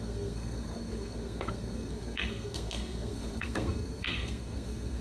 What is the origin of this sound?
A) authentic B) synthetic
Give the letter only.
B